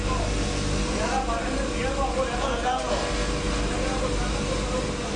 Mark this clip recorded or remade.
recorded